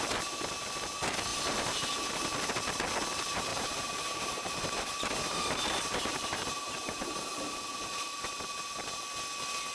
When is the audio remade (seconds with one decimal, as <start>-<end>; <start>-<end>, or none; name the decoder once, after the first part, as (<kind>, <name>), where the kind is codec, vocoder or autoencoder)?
1.3-2.0 (vocoder, BigVGAN v2); 3.5-8.1